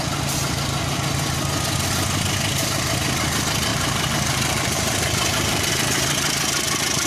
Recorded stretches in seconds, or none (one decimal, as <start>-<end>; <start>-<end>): 0.0-3.7; 5.7-7.1